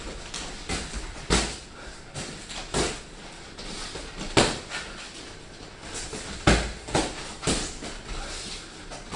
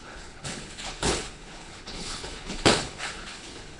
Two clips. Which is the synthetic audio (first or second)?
second